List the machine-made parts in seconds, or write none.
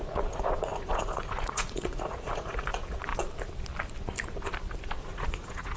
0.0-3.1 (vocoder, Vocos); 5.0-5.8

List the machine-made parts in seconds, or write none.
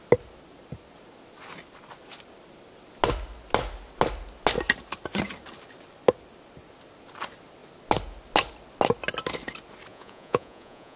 9.9-11.0 (vocoder, Vocos)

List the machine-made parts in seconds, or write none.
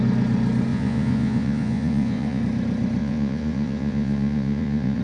0.7-2.4 (vocoder, Vocos); 3.0-5.0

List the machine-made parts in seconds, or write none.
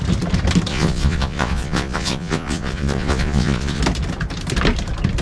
0.7-3.8 (vocoder, Vocos)